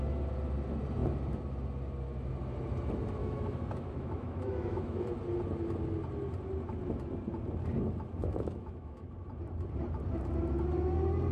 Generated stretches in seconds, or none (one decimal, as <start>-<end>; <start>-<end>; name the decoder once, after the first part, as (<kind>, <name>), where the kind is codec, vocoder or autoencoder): 3.2-5.2 (autoencoder, DAC-VAE); 8.2-9.1